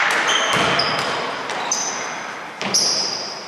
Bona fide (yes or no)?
no